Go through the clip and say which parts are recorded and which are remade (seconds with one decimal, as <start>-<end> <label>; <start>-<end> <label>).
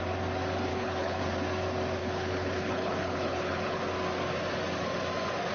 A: 0.0-0.7 recorded; 0.7-1.2 remade; 1.2-2.0 recorded; 2.0-3.8 remade; 3.8-5.5 recorded